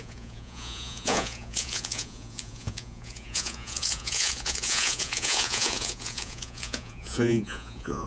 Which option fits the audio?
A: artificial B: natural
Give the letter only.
A